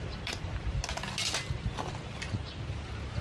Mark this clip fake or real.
real